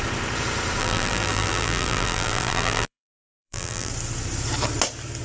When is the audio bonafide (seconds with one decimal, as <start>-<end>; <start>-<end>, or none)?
0.0-0.8; 3.9-5.2